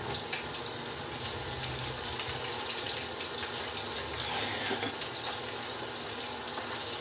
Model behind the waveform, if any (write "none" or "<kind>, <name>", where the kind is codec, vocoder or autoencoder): none